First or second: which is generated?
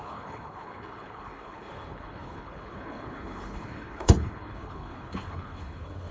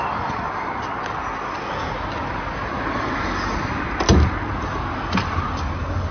first